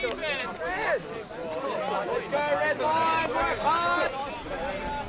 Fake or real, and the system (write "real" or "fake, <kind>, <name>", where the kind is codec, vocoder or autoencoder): real